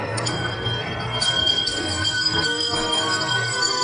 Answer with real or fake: fake